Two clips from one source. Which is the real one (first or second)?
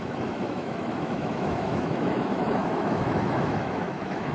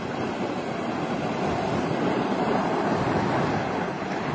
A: second